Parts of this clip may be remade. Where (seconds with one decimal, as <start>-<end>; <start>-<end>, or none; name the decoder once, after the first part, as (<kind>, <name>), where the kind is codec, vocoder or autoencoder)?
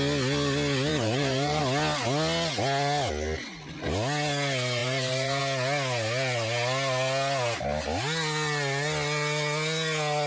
0.9-1.6 (vocoder, BigVGAN v2); 4.8-5.4